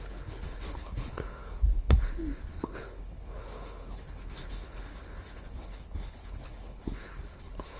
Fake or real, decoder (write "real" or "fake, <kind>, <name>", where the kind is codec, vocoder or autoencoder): fake, codec, HILCodec